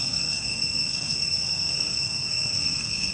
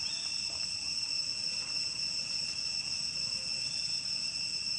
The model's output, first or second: first